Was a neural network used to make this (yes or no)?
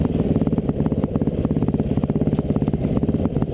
no